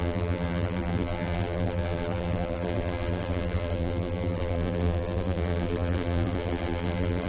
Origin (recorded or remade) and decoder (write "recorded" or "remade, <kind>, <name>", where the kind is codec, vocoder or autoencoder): remade, vocoder, BigVGAN v2